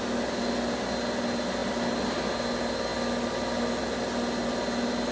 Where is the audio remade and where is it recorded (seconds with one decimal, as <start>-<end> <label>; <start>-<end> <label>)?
0.0-5.1 recorded